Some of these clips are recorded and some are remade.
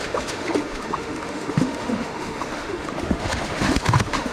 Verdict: remade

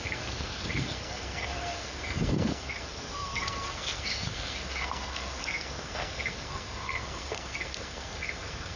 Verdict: remade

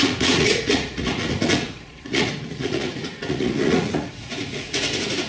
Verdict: remade